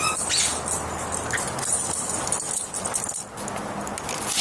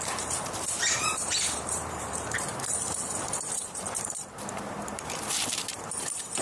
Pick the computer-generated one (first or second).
second